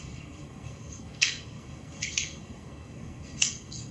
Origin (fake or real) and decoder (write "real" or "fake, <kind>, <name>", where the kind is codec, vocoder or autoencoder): fake, codec, SNAC